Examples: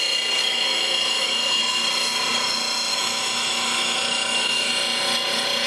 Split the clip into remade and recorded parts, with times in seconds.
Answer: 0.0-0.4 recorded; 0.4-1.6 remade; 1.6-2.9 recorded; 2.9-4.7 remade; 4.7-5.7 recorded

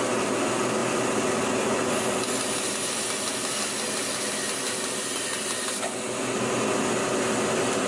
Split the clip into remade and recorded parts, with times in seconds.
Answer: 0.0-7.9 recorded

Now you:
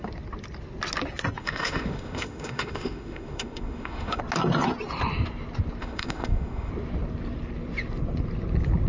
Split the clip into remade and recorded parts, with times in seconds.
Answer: 0.0-1.4 recorded; 1.4-4.2 remade; 4.2-5.8 recorded; 5.8-6.7 remade; 6.7-8.9 recorded

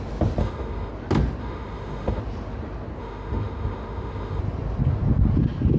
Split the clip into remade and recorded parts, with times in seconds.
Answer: 0.0-0.4 recorded; 0.4-0.9 remade; 0.9-1.4 recorded; 1.4-2.2 remade; 2.2-3.0 recorded; 3.0-4.4 remade; 4.4-5.8 recorded

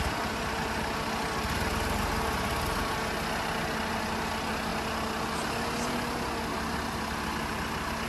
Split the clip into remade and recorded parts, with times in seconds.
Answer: 0.0-8.1 recorded

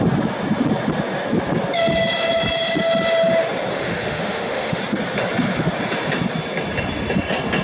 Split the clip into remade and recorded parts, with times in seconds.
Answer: 0.0-3.7 recorded; 3.7-4.8 remade; 4.8-7.6 recorded

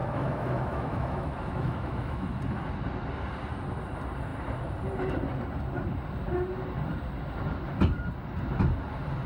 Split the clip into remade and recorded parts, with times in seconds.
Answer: 0.0-2.4 remade; 2.4-9.3 recorded

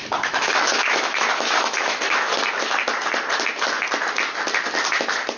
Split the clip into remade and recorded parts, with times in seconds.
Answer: 0.0-2.3 remade; 2.3-5.0 recorded; 5.0-5.4 remade